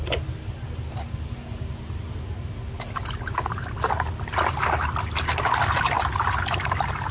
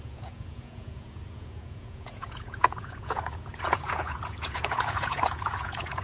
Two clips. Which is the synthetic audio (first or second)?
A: second